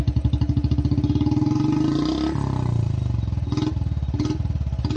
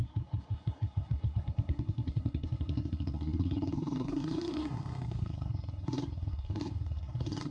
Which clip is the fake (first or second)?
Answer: second